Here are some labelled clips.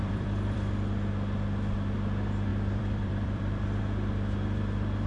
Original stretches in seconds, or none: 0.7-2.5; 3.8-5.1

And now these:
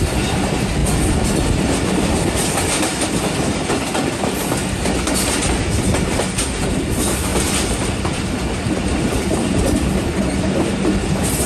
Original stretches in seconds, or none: 0.0-7.3; 8.0-8.9; 10.2-11.5

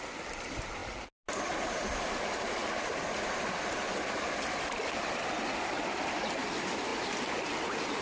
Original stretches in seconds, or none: 0.8-2.1; 2.6-5.0; 6.9-7.6

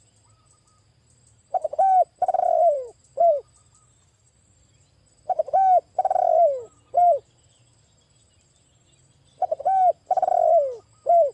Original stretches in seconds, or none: 3.0-7.0; 8.8-11.3

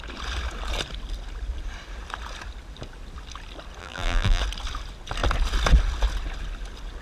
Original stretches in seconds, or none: 0.0-3.8; 4.4-7.0